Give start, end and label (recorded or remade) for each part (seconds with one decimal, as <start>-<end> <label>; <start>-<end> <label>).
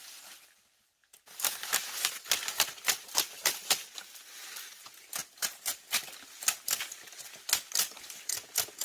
0.0-1.0 recorded; 1.0-3.7 remade; 3.7-5.2 recorded; 5.2-6.0 remade; 6.0-8.8 recorded